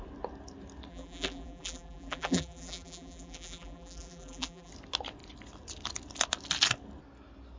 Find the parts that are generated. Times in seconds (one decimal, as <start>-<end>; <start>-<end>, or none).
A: 0.9-4.7